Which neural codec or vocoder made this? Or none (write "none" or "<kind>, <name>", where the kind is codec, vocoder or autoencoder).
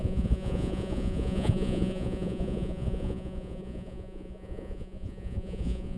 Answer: vocoder, Vocos